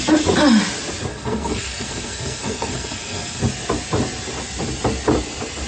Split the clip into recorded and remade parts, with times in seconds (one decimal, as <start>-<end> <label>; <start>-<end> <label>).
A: 0.0-1.1 recorded; 1.1-3.4 remade; 3.4-5.7 recorded